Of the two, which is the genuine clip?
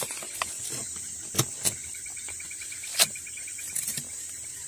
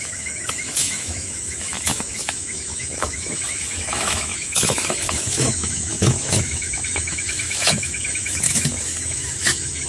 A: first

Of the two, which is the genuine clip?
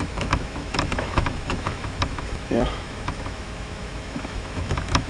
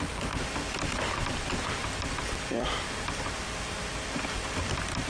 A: second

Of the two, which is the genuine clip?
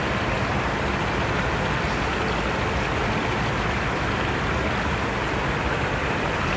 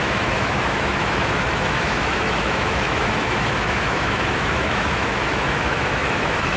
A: first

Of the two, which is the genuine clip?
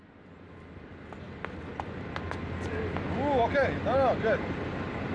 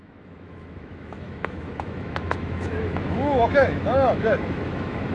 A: first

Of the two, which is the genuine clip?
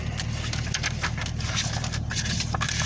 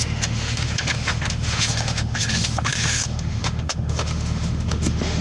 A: first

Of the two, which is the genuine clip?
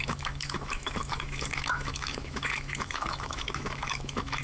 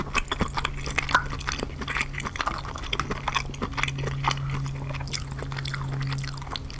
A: second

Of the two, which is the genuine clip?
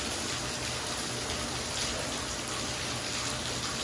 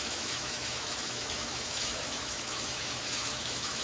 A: first